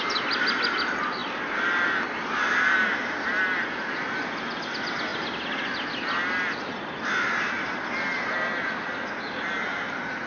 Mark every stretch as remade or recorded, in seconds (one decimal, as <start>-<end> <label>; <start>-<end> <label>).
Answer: 0.0-1.2 recorded; 1.2-2.5 remade; 2.5-10.3 recorded

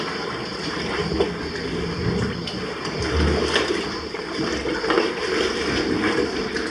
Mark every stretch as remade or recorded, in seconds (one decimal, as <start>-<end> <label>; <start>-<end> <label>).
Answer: 0.0-0.5 recorded; 0.5-1.3 remade; 1.3-6.7 recorded